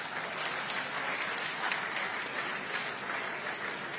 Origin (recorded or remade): recorded